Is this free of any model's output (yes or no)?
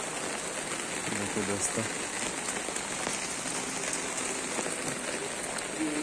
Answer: yes